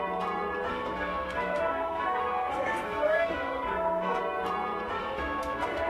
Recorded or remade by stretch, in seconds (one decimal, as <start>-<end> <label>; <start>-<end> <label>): 0.0-0.7 recorded; 0.7-4.2 remade; 4.2-5.0 recorded; 5.0-5.9 remade